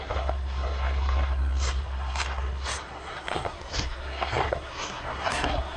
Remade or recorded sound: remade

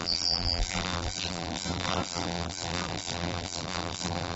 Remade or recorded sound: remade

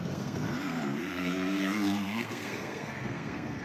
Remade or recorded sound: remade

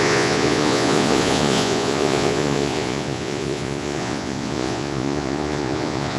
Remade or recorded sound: remade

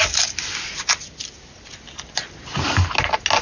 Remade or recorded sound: recorded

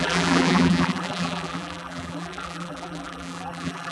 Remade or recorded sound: remade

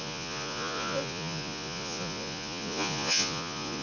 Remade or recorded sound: remade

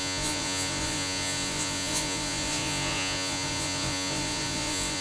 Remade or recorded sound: remade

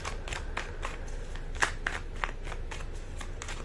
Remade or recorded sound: recorded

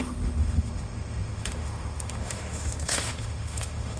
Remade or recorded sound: remade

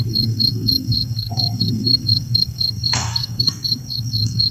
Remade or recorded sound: remade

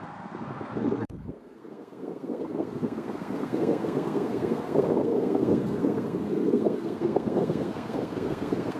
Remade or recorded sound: remade